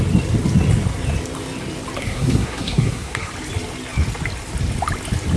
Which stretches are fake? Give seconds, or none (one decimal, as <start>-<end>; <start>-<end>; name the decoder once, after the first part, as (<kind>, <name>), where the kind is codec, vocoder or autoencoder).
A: 2.0-3.3 (codec, SNAC)